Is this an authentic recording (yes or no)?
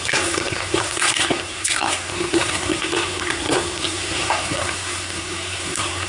no